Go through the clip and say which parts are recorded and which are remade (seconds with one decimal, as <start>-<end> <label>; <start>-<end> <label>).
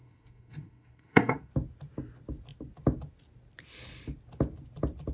0.0-1.5 remade; 1.5-5.1 recorded